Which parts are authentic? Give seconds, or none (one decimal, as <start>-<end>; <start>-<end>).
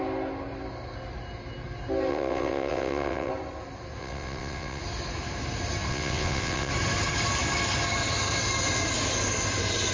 0.0-2.1; 3.3-4.0; 4.8-5.9; 6.7-9.9